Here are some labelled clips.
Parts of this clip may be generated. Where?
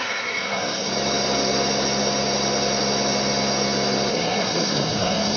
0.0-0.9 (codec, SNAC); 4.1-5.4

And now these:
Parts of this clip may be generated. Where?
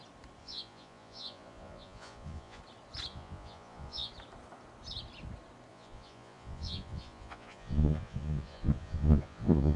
0.4-2.6 (vocoder, Vocos); 3.1-4.1; 5.7-9.8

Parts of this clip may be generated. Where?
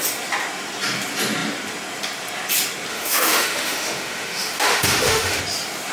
2.9-5.4 (autoencoder, DAC-VAE)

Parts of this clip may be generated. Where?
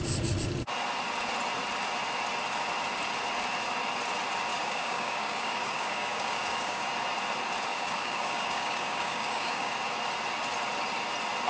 4.5-6.9 (codec, DAC); 7.7-9.7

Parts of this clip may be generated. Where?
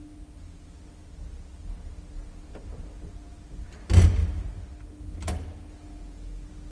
none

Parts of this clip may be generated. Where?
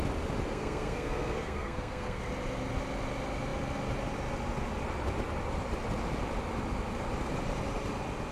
0.5-2.2 (codec, SNAC)